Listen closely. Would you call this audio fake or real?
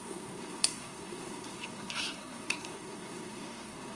fake